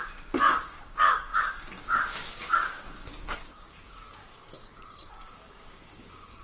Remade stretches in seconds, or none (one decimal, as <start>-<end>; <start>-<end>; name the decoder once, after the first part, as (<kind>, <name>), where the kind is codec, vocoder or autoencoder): 0.0-6.4 (codec, DAC)